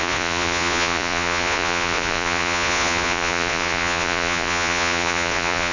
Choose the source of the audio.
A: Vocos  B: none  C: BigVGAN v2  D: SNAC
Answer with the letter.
A